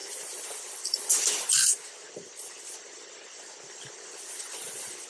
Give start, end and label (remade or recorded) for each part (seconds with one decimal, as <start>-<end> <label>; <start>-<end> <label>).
0.0-5.1 recorded